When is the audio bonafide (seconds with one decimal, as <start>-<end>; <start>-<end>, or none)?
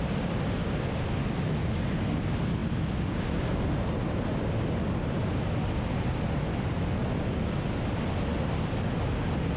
0.0-9.6